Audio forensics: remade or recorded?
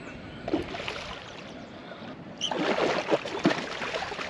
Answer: recorded